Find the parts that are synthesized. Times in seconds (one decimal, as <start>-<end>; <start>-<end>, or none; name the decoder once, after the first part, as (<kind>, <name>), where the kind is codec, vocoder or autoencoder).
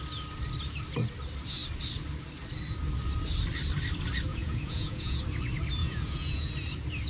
4.3-5.2 (vocoder, Vocos); 5.8-6.5